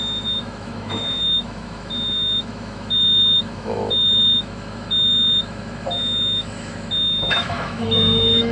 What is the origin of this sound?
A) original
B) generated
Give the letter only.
B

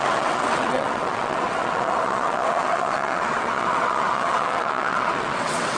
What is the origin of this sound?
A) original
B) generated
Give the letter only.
B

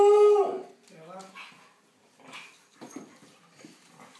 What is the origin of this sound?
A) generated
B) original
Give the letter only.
B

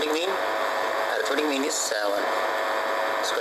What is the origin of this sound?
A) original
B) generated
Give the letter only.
B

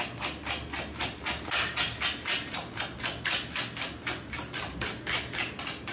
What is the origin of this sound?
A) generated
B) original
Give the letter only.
B